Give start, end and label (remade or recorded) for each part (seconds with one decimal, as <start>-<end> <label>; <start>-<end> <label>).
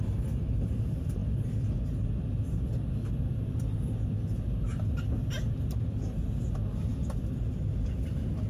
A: 0.0-8.5 recorded